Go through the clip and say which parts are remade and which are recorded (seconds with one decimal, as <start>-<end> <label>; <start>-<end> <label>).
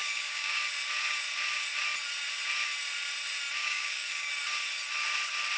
0.0-0.6 remade; 0.6-3.6 recorded; 3.6-4.3 remade; 4.3-5.6 recorded